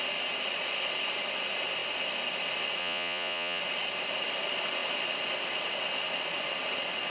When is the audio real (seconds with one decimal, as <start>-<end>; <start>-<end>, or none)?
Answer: 0.0-2.8; 3.6-7.1

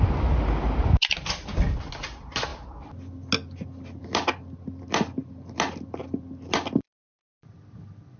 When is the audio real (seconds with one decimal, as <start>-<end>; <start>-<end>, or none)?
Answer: 0.0-8.2